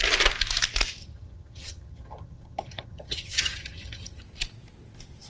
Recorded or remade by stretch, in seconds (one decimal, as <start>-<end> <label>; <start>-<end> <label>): 0.0-1.0 recorded; 1.0-4.2 remade; 4.2-5.3 recorded